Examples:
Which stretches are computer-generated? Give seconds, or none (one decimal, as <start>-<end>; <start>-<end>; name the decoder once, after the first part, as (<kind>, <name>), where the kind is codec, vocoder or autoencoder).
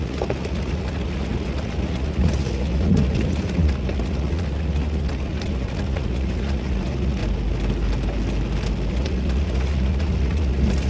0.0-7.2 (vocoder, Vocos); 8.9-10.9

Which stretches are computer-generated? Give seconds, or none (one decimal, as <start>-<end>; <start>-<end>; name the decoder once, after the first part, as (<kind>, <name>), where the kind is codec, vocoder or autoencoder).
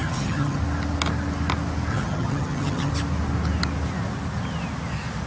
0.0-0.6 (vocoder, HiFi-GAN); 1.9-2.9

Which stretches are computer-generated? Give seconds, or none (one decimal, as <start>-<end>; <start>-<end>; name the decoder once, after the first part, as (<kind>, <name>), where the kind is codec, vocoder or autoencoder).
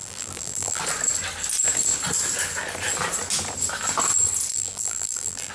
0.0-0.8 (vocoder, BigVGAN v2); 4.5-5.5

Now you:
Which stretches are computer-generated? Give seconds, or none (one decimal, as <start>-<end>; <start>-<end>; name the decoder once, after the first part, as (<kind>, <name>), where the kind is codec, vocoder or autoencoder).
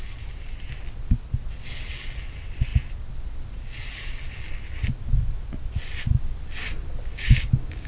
7.1-7.9 (codec, DAC)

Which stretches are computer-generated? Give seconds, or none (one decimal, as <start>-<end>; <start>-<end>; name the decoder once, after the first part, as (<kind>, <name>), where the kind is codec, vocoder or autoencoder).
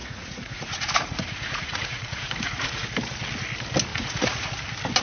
0.0-2.9 (vocoder, Vocos); 3.9-4.5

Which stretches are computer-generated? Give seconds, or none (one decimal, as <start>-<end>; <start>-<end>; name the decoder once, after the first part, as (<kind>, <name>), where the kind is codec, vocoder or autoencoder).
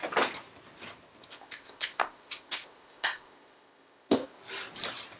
1.3-4.4 (codec, ZipCodec)